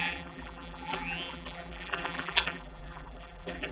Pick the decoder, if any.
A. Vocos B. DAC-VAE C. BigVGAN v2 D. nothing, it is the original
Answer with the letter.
C